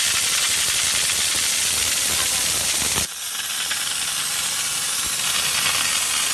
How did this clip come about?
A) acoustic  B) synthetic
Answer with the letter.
A